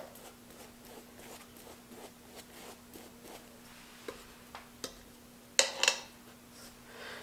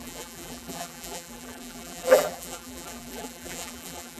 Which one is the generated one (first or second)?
second